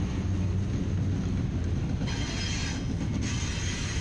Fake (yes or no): no